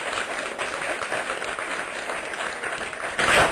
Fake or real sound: real